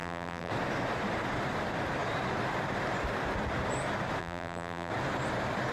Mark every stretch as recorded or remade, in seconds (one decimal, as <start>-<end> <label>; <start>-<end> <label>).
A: 0.0-0.5 remade; 0.5-4.2 recorded; 4.2-4.9 remade; 4.9-5.7 recorded